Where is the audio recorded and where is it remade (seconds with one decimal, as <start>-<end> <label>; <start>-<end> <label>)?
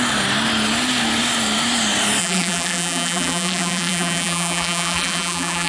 0.0-2.2 recorded; 2.2-5.7 remade